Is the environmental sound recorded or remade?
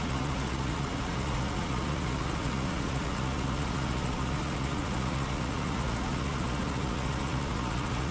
remade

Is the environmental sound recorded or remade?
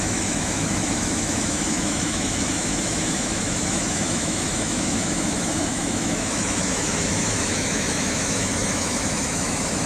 remade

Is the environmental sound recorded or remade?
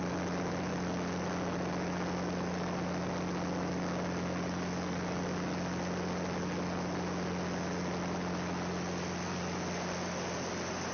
recorded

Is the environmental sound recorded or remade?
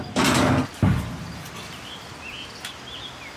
recorded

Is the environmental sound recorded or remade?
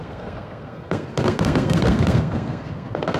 remade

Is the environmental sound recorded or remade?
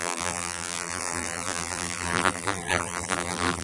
remade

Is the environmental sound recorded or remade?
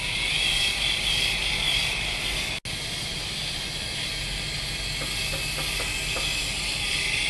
recorded